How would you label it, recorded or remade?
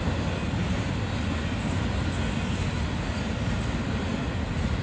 recorded